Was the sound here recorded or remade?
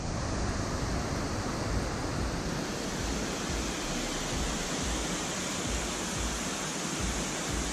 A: recorded